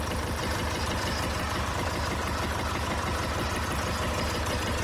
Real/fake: fake